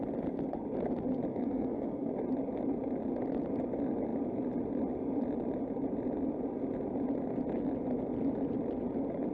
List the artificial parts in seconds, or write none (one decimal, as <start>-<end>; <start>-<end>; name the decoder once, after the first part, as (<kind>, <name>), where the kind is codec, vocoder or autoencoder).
1.3-2.1 (codec, SNAC)